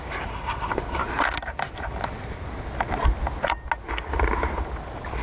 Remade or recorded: recorded